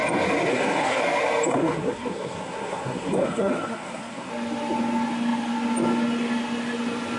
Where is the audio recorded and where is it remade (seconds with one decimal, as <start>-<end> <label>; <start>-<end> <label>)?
0.0-0.5 recorded; 0.5-1.0 remade; 1.0-1.5 recorded; 1.5-4.3 remade; 4.3-7.2 recorded